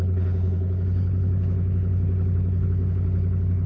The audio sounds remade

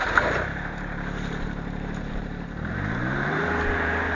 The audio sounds remade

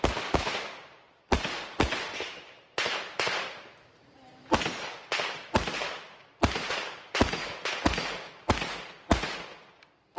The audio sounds recorded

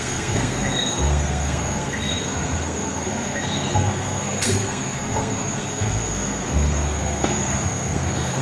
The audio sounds remade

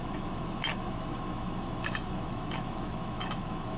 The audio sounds remade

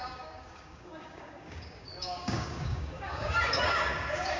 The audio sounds remade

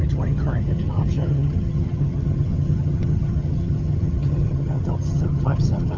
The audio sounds remade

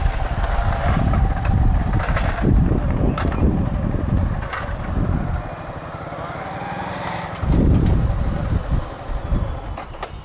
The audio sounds recorded